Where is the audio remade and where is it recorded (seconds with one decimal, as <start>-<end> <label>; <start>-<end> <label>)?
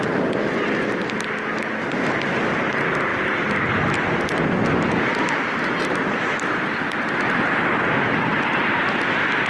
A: 0.0-9.5 recorded